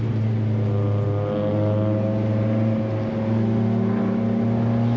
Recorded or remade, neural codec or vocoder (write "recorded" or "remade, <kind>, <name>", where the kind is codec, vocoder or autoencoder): recorded